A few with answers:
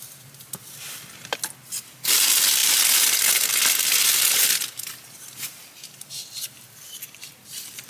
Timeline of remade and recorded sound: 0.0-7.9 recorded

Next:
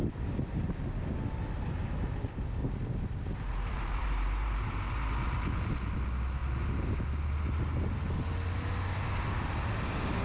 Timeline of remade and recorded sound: 0.0-0.7 remade; 0.7-2.6 recorded; 2.6-4.9 remade; 4.9-10.2 recorded

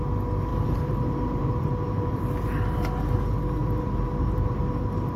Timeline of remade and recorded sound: 0.0-0.5 recorded; 0.5-2.2 remade; 2.2-3.6 recorded; 3.6-5.2 remade

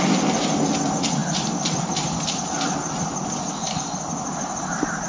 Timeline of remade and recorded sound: 0.0-5.1 recorded

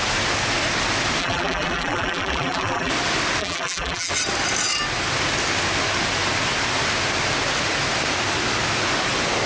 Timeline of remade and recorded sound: 0.0-1.2 recorded; 1.2-2.9 remade; 2.9-3.4 recorded; 3.4-4.1 remade; 4.1-9.5 recorded

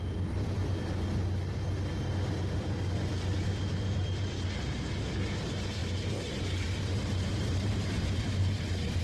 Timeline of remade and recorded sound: 0.0-5.8 recorded; 5.8-9.0 remade